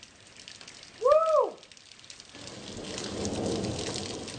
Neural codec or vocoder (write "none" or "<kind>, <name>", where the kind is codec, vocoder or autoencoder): none